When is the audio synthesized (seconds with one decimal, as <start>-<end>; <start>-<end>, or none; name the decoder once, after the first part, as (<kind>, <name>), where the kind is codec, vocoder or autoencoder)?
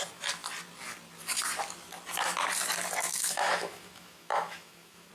3.1-5.1 (autoencoder, DAC-VAE)